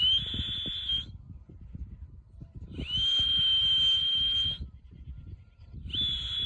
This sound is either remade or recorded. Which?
remade